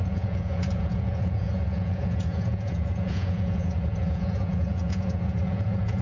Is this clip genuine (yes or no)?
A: no